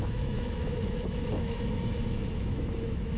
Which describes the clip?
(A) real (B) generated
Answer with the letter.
B